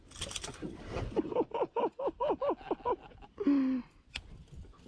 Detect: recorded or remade recorded